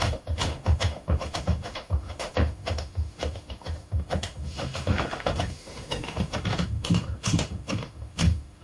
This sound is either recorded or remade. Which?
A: remade